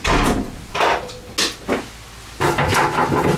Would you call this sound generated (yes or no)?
no